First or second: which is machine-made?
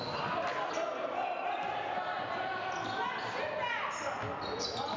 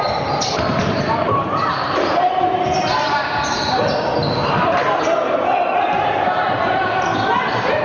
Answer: second